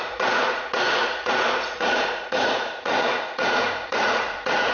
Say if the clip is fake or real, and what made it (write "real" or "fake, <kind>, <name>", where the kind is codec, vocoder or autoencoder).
fake, vocoder, Vocos